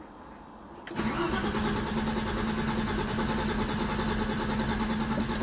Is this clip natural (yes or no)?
yes